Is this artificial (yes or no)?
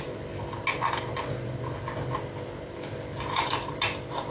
no